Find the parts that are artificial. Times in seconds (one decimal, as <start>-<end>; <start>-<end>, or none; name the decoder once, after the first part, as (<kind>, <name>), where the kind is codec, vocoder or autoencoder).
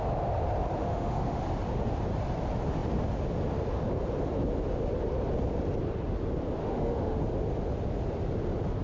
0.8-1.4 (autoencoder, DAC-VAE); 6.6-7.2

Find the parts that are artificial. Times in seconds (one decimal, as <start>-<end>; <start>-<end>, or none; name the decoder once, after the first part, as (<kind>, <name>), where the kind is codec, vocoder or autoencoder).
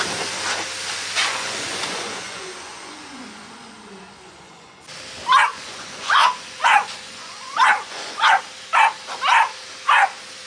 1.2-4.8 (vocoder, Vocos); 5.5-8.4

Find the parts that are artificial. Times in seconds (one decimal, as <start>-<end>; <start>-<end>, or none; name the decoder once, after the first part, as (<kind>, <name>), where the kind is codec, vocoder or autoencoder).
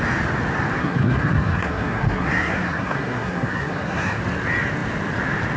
0.8-4.2 (codec, SNAC)